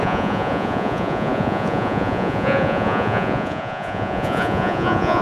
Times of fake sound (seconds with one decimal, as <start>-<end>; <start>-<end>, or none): 0.0-5.2